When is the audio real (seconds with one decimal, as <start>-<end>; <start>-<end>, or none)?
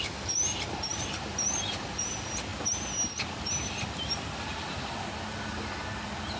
2.5-6.4